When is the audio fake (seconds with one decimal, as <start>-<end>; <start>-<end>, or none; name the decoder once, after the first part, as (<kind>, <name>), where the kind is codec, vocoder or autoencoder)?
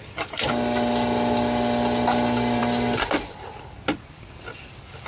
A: none